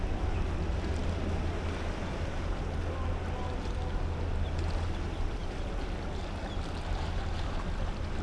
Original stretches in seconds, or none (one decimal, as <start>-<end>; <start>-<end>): 0.0-8.2

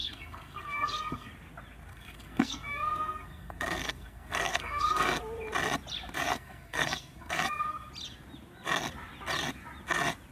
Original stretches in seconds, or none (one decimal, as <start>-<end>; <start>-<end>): 1.3-1.9; 5.2-6.3; 7.9-10.3

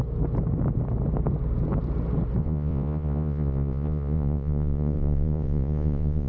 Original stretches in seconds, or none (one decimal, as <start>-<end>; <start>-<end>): 0.0-2.4

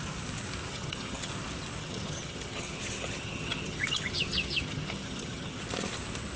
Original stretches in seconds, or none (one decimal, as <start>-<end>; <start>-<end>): 0.0-0.7; 1.3-1.8; 5.6-6.4

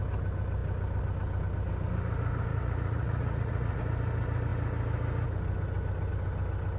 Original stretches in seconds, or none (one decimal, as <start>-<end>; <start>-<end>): 0.0-2.5; 3.8-6.8

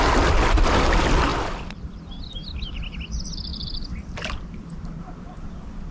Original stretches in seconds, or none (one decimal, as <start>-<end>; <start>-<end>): 0.0-1.3; 2.0-3.5

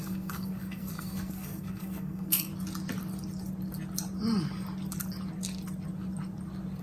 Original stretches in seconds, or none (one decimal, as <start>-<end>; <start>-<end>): 2.5-6.8

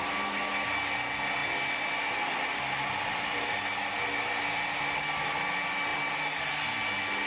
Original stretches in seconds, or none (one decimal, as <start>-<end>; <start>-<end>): 0.0-7.3